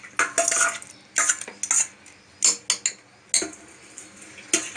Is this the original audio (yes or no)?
yes